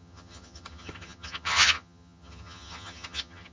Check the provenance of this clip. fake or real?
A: fake